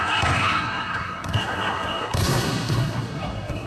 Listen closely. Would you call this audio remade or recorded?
remade